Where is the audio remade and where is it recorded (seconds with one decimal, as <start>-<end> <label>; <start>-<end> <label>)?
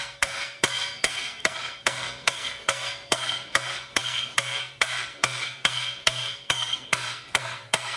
0.0-8.0 remade